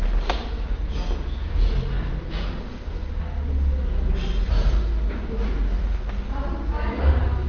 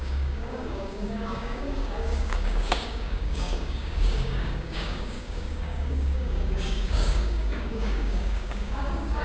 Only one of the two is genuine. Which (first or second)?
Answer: first